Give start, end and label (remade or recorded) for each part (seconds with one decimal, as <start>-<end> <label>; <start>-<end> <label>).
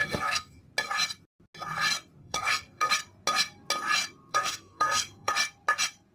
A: 0.0-0.6 remade; 0.6-2.2 recorded; 2.2-2.9 remade; 2.9-4.3 recorded; 4.3-5.3 remade; 5.3-6.1 recorded